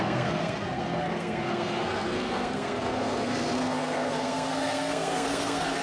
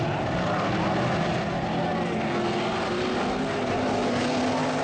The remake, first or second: first